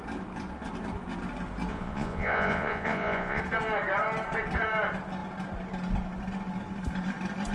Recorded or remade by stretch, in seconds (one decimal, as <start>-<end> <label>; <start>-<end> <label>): 0.0-1.7 recorded; 1.7-3.4 remade; 3.4-7.5 recorded